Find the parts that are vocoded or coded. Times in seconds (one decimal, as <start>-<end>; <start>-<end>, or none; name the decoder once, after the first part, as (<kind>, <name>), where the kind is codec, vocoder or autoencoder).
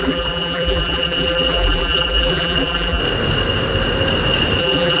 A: 0.0-3.0 (vocoder, BigVGAN v2); 4.6-5.0